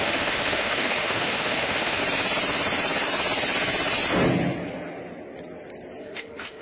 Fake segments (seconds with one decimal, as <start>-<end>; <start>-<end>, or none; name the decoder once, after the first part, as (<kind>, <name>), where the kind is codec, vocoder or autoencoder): 0.0-2.0 (autoencoder, DAC-VAE); 6.0-6.6